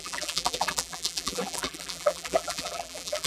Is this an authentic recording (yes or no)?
no